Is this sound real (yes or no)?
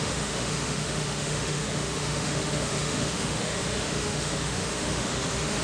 no